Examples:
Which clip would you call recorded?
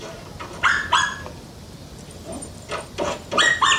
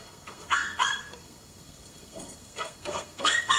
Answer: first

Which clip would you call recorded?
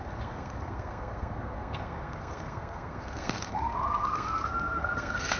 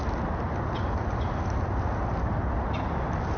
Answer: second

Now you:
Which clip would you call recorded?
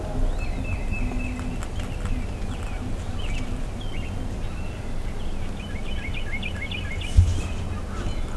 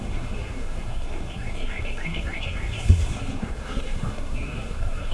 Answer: first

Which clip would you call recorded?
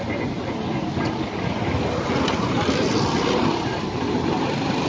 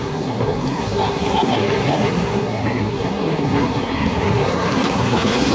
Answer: first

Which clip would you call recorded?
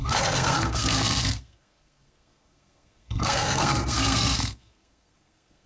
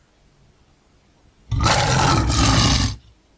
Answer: second